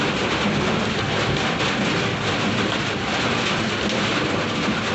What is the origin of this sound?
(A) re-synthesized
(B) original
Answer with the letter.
B